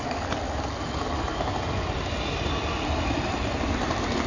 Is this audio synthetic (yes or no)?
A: no